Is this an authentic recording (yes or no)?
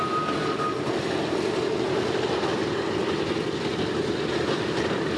yes